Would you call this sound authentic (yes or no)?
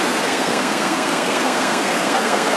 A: no